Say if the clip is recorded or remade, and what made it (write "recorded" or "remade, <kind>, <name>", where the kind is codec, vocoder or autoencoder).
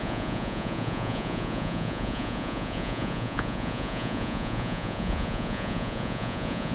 remade, vocoder, Vocos